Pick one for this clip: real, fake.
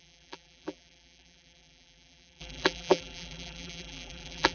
fake